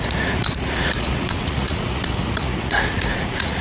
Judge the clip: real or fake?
fake